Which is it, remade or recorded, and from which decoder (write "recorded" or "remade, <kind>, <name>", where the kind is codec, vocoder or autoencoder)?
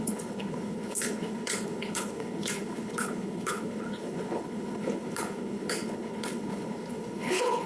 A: remade, codec, HILCodec